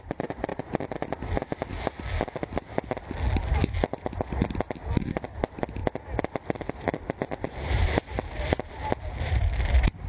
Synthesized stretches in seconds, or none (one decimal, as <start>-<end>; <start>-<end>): 0.0-0.5; 5.2-5.8; 6.7-10.1